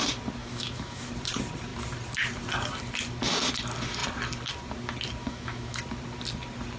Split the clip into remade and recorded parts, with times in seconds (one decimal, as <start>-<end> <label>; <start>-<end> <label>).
0.0-0.4 recorded; 0.4-1.1 remade; 1.1-5.2 recorded; 5.2-5.8 remade; 5.8-6.8 recorded

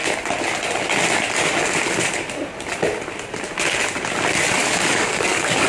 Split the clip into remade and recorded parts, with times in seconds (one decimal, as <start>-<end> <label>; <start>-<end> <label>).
0.0-4.6 recorded; 4.6-5.7 remade

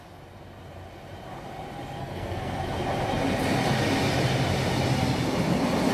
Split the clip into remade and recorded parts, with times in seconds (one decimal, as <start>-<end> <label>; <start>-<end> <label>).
0.0-2.0 recorded; 2.0-2.6 remade; 2.6-5.9 recorded

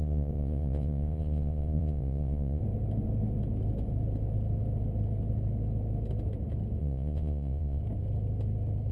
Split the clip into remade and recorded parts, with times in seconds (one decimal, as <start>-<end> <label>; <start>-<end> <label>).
0.0-2.6 remade; 2.6-6.8 recorded; 6.8-7.8 remade; 7.8-8.9 recorded

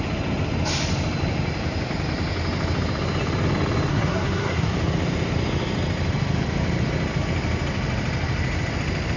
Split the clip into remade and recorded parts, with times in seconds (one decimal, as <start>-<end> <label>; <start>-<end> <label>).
0.0-3.9 recorded; 3.9-4.7 remade; 4.7-9.2 recorded

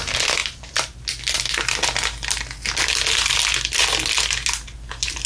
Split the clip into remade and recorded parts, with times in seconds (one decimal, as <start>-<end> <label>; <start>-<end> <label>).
0.0-0.4 recorded; 0.4-1.0 remade; 1.0-5.3 recorded

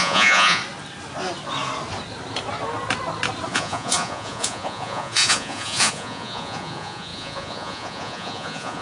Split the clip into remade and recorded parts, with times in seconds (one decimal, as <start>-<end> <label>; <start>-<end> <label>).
0.0-0.6 remade; 0.6-3.5 recorded; 3.5-8.8 remade

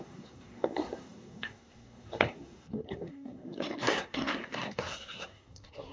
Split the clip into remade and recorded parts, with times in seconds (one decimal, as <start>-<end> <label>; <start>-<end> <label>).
0.0-5.9 remade